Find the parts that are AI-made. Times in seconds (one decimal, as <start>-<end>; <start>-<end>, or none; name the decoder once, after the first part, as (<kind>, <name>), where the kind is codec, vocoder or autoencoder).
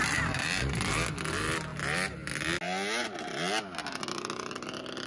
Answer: none